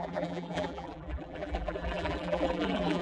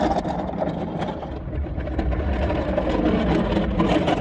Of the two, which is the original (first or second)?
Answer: second